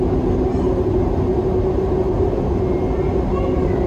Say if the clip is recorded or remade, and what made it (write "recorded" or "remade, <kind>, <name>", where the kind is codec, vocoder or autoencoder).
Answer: recorded